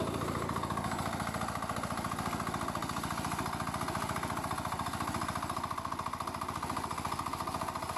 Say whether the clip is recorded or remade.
recorded